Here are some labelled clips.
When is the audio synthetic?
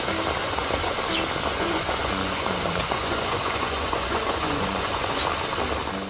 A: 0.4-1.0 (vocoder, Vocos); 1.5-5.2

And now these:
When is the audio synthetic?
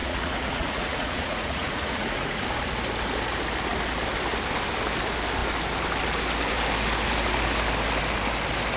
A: 0.0-2.4 (vocoder, Vocos)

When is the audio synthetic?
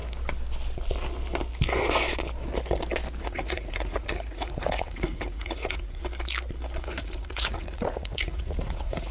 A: 3.2-6.0 (vocoder, Vocos); 6.8-9.1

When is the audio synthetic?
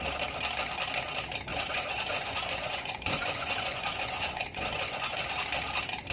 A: 1.5-5.2 (vocoder, Vocos)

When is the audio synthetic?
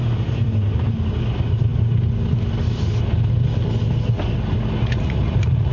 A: 4.8-5.7 (vocoder, Vocos)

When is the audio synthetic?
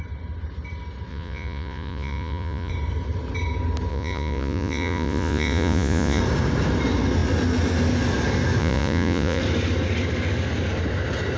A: 1.1-2.7 (vocoder, Vocos); 3.9-6.2; 8.6-9.4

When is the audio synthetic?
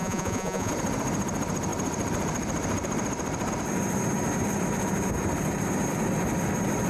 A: 0.0-0.7 (vocoder, Vocos)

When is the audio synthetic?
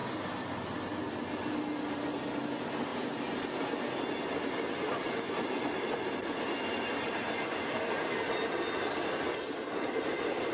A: none